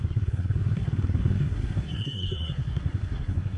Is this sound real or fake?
fake